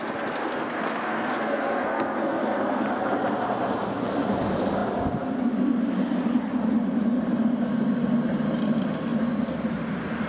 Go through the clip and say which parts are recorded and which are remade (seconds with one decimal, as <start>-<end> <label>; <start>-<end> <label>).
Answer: 0.0-0.4 recorded; 0.4-2.8 remade; 2.8-10.3 recorded